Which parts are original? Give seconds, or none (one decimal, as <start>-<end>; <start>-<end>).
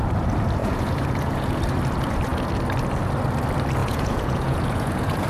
0.0-0.6; 1.6-3.8